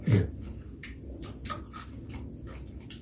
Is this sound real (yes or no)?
yes